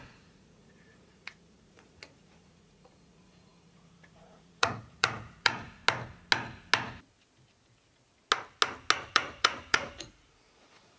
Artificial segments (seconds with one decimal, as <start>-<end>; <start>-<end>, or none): 0.0-5.8; 9.1-11.0